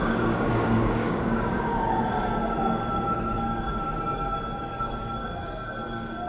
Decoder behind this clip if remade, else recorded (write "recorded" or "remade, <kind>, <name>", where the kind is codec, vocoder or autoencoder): remade, codec, DAC